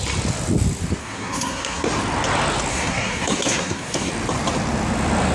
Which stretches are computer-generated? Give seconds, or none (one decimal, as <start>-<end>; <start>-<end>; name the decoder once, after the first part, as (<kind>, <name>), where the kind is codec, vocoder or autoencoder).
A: 1.0-1.9 (codec, SNAC); 2.7-4.1